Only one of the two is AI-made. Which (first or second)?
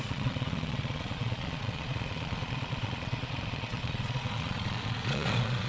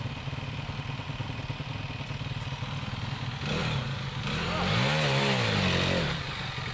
first